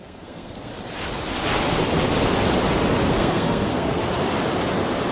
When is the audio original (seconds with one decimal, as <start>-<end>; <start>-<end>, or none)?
0.7-3.1; 4.0-5.1